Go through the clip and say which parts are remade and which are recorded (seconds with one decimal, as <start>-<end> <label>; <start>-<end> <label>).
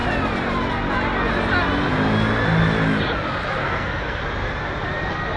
0.0-3.6 recorded; 3.6-4.2 remade; 4.2-5.4 recorded